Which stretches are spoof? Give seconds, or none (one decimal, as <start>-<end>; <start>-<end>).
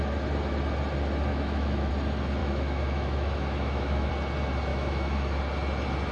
1.3-1.9; 2.4-4.1; 4.7-5.4